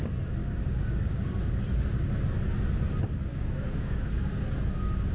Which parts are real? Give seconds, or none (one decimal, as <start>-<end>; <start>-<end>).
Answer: 0.0-0.4; 1.6-3.3; 4.4-5.1